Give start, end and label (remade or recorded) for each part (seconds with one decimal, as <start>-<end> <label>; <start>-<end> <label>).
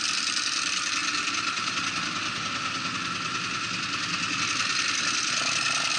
0.0-6.0 recorded